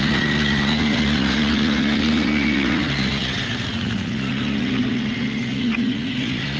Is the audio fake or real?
fake